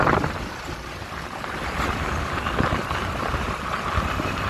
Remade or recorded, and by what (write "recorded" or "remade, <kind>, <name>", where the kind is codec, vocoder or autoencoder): recorded